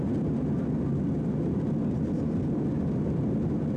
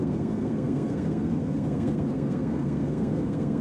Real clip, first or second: first